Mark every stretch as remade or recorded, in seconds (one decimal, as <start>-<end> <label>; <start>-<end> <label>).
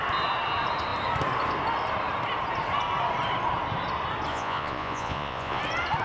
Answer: 0.0-4.3 recorded; 4.3-5.6 remade; 5.6-6.0 recorded